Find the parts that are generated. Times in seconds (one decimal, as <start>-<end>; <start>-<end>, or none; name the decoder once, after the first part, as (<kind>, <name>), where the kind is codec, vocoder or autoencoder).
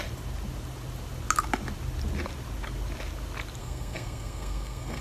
3.6-5.0 (codec, SNAC)